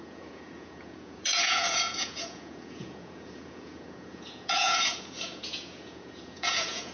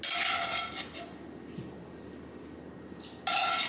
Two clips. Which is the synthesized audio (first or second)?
first